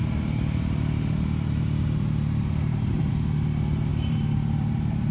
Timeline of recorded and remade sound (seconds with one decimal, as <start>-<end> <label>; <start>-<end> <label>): 0.0-3.1 remade; 3.1-3.9 recorded; 3.9-5.1 remade